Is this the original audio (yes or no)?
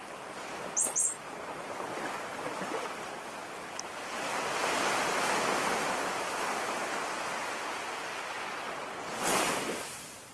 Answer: yes